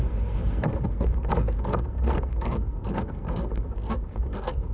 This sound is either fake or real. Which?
fake